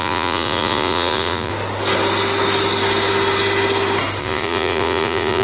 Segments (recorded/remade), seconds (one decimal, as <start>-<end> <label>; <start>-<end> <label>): 0.0-1.5 remade; 1.5-4.2 recorded; 4.2-5.4 remade